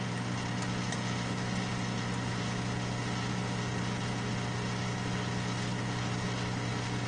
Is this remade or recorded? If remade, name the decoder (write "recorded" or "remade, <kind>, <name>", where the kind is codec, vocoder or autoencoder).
recorded